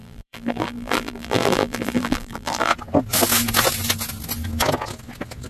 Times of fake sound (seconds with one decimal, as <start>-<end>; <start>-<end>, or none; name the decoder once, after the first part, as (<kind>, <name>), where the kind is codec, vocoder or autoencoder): 0.0-2.7 (vocoder, BigVGAN v2)